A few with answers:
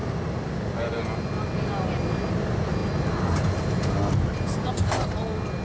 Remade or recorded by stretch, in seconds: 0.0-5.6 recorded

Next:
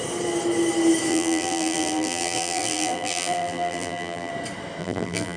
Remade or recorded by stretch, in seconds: 0.0-1.1 recorded; 1.1-4.3 remade; 4.3-4.8 recorded; 4.8-5.4 remade